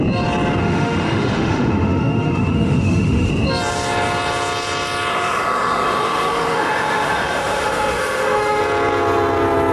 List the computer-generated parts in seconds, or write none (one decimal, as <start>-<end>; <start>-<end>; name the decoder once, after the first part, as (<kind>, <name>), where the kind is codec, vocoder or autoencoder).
0.6-3.3 (autoencoder, DAC-VAE); 5.1-8.6